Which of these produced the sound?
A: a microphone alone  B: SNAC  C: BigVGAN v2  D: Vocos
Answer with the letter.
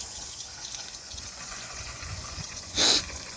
D